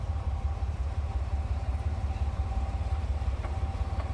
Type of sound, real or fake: fake